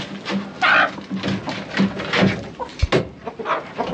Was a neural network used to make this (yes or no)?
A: no